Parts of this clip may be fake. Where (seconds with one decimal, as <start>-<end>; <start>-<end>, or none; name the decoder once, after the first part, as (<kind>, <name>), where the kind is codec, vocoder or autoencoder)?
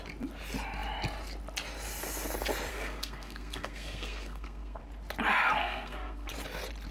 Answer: 2.7-4.8 (codec, SNAC); 5.6-6.3